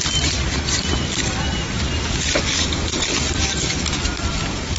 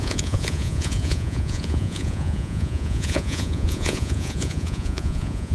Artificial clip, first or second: second